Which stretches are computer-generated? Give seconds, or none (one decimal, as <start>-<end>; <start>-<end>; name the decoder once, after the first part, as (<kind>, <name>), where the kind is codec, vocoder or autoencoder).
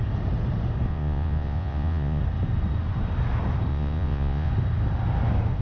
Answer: 0.9-2.2 (vocoder, Vocos); 3.7-4.5